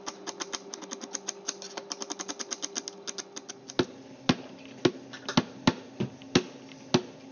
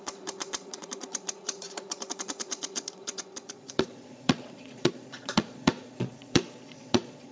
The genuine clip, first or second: first